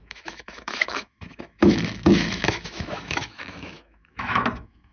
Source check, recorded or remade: remade